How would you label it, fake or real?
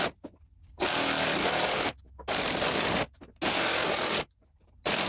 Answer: real